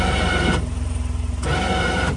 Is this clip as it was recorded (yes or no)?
yes